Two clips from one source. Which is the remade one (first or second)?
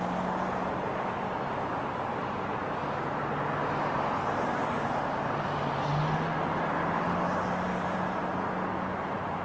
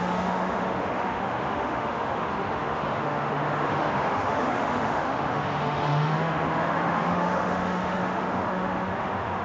second